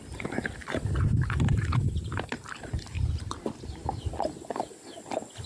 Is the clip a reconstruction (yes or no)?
no